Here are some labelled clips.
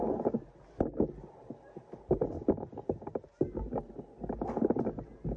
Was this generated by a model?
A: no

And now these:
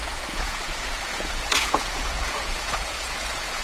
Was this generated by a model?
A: yes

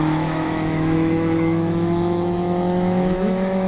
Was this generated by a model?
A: yes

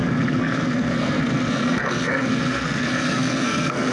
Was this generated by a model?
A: yes